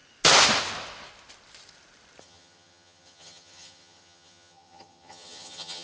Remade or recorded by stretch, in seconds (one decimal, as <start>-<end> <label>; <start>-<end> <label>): 0.0-2.2 recorded; 2.2-5.8 remade

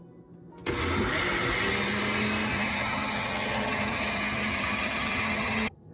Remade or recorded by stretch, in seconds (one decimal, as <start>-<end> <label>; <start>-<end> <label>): 0.0-2.5 recorded; 2.5-5.9 remade

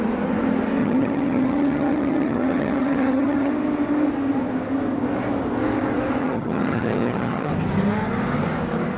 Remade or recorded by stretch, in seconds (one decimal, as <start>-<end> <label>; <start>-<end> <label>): 0.0-0.8 recorded; 0.8-3.5 remade; 3.5-6.2 recorded; 6.2-7.5 remade; 7.5-9.0 recorded